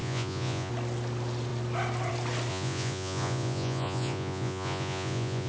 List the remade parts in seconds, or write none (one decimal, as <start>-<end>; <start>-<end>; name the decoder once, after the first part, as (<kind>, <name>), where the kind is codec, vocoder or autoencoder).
0.0-0.7 (vocoder, Vocos); 2.5-5.5